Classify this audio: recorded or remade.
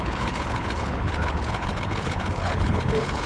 remade